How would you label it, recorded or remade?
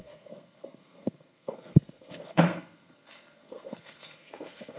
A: remade